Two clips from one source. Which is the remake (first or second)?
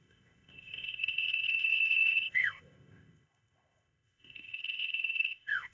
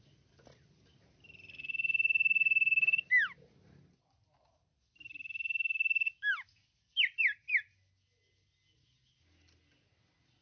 first